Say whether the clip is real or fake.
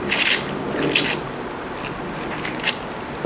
real